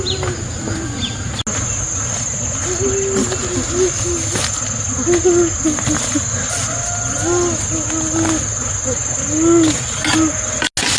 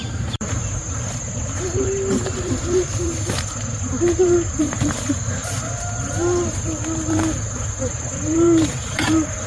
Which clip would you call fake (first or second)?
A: second